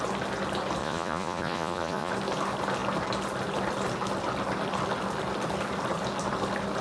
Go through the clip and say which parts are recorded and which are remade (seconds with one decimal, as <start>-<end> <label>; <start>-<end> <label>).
0.0-0.8 recorded; 0.8-2.1 remade; 2.1-6.8 recorded